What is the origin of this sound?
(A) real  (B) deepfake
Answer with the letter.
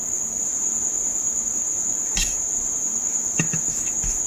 B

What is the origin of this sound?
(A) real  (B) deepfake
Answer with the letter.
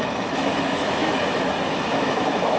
B